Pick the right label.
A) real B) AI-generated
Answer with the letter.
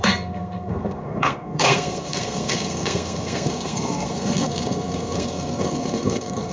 B